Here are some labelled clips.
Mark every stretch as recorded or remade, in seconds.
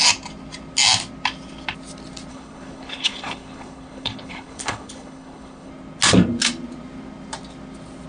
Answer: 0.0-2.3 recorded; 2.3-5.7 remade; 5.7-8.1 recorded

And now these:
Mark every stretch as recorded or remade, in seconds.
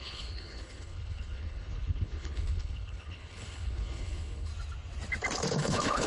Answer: 0.0-4.5 remade; 4.5-5.5 recorded; 5.5-6.1 remade